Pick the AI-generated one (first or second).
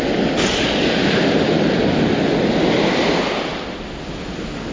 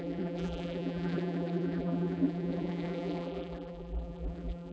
second